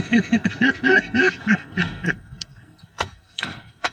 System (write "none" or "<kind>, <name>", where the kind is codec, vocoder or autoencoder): codec, SNAC